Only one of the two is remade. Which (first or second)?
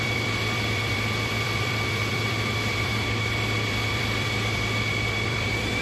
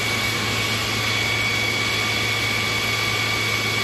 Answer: first